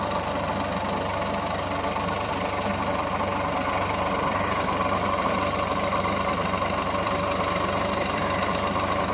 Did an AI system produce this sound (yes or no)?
yes